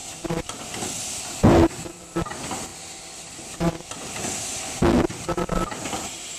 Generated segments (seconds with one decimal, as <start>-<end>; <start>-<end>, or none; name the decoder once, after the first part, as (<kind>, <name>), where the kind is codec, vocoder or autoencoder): none